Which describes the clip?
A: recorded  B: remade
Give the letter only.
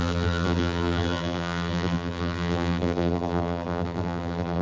B